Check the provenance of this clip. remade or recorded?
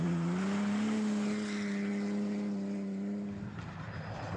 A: recorded